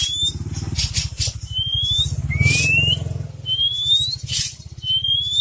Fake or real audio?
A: real